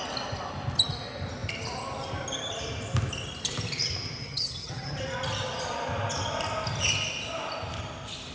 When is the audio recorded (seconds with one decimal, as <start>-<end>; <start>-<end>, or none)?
0.0-4.2; 5.0-8.3